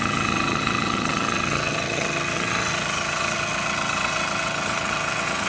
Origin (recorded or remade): remade